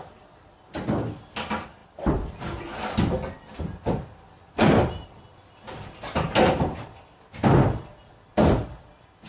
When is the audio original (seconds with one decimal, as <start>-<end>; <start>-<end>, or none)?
0.0-9.3